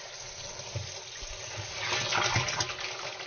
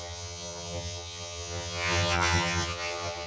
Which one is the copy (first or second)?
second